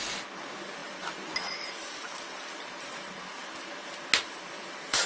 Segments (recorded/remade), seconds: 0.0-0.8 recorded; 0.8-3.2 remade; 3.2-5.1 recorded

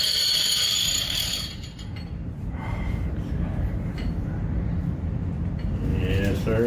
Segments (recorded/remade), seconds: 0.0-5.9 remade; 5.9-6.7 recorded

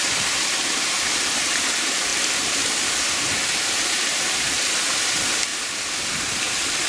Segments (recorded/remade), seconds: 0.0-5.5 remade; 5.5-6.1 recorded; 6.1-6.9 remade

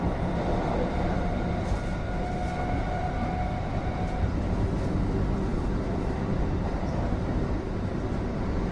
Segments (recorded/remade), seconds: 0.0-5.5 recorded; 5.5-6.1 remade; 6.1-8.7 recorded